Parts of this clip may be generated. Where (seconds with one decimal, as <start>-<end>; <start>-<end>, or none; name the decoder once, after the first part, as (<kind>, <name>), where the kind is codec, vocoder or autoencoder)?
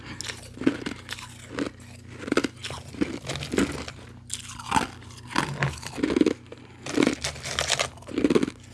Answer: none